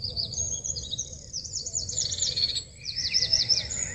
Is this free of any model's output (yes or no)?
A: no